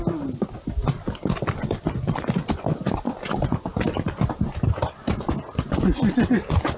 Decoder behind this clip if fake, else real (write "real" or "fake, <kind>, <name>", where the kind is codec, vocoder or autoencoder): fake, vocoder, BigVGAN v2